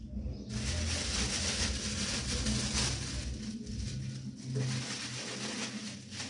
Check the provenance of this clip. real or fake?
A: real